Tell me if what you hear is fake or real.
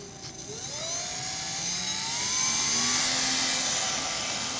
real